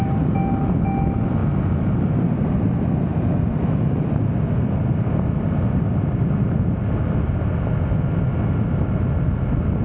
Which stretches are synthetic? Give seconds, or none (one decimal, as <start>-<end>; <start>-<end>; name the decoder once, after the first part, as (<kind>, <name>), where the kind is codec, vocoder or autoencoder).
none

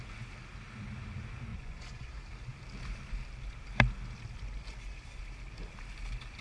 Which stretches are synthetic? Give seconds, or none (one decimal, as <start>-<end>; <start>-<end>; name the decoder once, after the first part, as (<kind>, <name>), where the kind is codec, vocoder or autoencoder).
1.5-2.1 (vocoder, Vocos)

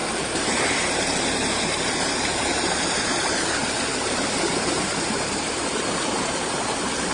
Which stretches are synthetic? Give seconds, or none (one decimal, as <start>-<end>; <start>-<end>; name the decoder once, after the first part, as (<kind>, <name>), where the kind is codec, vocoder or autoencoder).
0.0-7.1 (vocoder, BigVGAN v2)

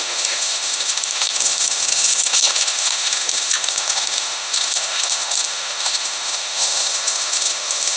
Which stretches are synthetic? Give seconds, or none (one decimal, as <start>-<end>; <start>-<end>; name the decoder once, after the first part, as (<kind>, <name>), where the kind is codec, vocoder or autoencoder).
0.0-8.0 (autoencoder, DAC-VAE)

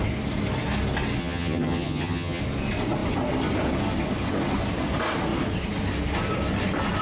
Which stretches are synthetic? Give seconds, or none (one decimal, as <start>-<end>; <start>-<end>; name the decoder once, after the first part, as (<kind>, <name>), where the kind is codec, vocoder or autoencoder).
1.2-2.4 (vocoder, HiFi-GAN)

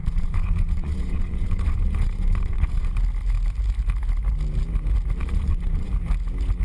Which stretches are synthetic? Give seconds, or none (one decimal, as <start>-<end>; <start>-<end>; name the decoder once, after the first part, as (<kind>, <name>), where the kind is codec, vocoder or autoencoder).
0.0-2.9 (vocoder, Vocos); 5.2-5.9

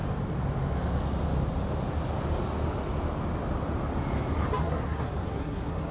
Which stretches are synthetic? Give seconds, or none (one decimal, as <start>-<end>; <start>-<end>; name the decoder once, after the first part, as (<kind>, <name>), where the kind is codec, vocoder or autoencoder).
4.6-5.9 (codec, SNAC)